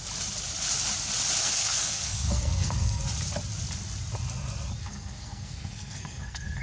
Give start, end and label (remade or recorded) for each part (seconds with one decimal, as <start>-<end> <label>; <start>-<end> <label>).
0.0-1.4 recorded; 1.4-3.0 remade; 3.0-4.8 recorded; 4.8-6.6 remade